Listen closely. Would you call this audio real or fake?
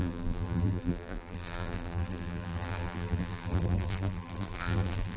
fake